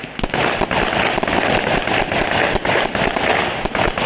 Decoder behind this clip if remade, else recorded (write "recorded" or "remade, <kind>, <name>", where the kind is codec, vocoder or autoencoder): recorded